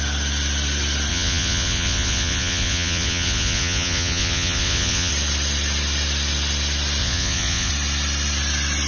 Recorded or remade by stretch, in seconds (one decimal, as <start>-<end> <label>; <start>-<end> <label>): 0.0-1.1 recorded; 1.1-5.1 remade; 5.1-7.0 recorded; 7.0-7.7 remade; 7.7-8.9 recorded